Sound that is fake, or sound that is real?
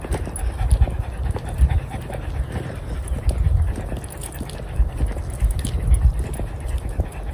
real